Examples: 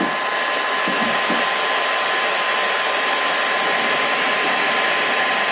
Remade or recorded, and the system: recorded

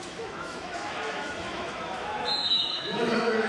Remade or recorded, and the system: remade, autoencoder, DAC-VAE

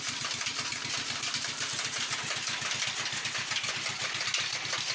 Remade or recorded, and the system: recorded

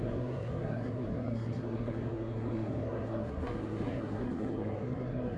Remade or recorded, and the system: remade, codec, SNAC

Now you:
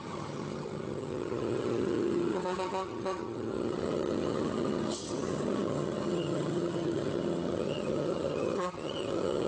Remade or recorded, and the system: remade, vocoder, HiFi-GAN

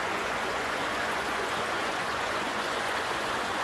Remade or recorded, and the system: remade, vocoder, Vocos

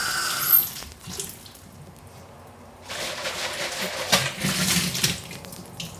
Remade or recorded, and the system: recorded